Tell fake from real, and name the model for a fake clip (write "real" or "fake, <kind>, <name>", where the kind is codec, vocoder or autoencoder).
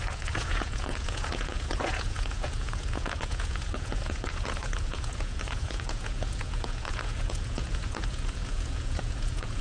fake, vocoder, Vocos